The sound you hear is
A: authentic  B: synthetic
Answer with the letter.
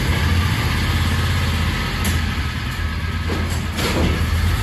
A